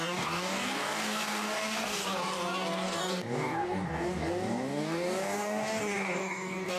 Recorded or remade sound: remade